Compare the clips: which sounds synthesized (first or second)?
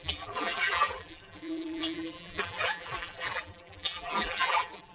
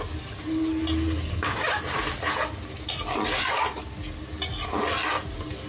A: first